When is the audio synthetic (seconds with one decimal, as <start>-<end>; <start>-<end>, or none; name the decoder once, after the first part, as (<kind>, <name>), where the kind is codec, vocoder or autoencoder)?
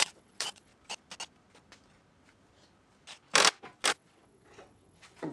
0.0-0.7 (vocoder, WaveNeXt); 3.9-5.3